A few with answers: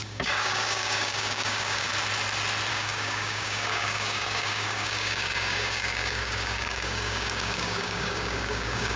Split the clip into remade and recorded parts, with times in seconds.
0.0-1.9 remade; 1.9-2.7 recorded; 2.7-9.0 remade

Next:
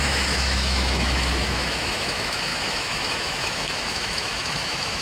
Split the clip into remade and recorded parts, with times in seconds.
0.0-5.0 remade